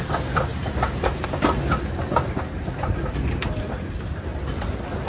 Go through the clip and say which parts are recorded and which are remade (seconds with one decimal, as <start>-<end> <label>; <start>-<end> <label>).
0.0-5.1 recorded